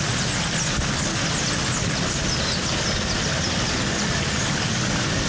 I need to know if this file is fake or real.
real